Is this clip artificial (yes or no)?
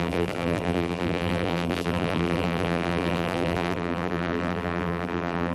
yes